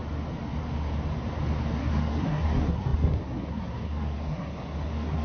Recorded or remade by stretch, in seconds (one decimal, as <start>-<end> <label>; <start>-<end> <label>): 0.0-1.8 recorded; 1.8-5.2 remade